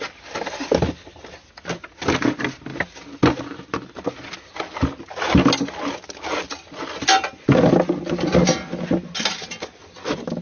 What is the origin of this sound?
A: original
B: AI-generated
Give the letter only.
A